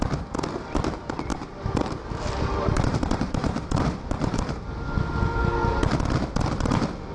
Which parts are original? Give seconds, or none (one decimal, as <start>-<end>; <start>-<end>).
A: 0.0-1.3; 3.8-7.1